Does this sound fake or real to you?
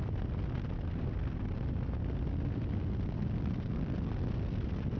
real